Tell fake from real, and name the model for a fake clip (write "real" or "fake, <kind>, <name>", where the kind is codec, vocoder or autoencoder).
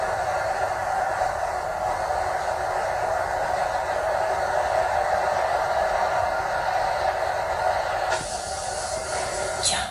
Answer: real